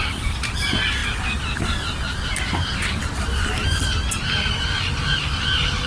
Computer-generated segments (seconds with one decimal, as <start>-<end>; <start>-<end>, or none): none